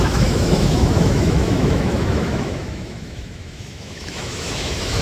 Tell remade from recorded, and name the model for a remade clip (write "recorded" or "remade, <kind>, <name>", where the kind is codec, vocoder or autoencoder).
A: remade, autoencoder, DAC-VAE